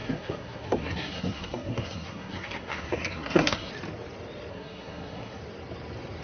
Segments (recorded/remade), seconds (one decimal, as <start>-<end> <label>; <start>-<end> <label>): 0.0-3.7 remade; 3.7-4.5 recorded; 4.5-5.4 remade; 5.4-6.2 recorded